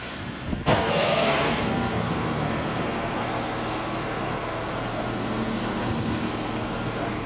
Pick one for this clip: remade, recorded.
remade